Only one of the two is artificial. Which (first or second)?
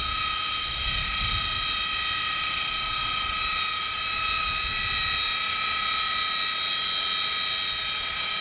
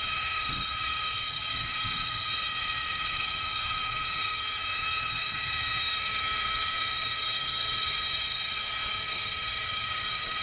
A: second